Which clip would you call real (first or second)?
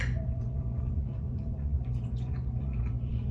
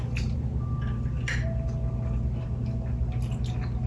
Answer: second